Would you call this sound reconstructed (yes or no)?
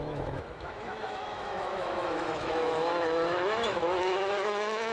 yes